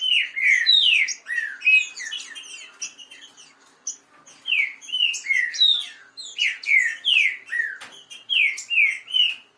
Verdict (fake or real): real